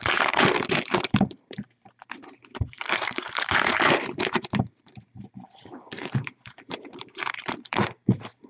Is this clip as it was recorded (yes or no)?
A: no